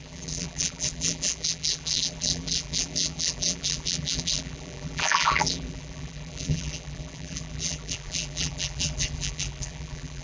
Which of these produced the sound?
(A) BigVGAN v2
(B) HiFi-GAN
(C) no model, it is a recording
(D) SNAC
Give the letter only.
A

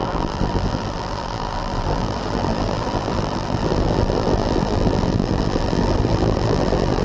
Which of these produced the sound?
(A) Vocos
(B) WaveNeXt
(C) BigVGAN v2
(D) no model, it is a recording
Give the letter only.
C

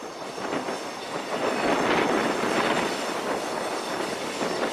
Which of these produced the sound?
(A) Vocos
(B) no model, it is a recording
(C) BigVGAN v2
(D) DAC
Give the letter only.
B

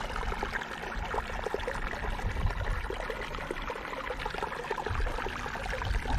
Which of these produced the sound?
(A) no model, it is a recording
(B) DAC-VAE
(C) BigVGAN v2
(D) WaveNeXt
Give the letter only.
A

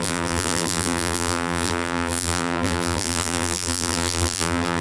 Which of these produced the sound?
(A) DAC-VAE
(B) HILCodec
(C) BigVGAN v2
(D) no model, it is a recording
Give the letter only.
C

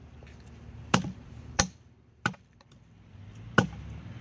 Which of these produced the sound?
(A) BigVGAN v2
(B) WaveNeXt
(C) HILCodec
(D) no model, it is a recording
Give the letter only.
A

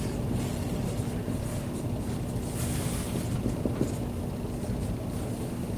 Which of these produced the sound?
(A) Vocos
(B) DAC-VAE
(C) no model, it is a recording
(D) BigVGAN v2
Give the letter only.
C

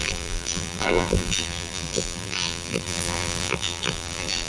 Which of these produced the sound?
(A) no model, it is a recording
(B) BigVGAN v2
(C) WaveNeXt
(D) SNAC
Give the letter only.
B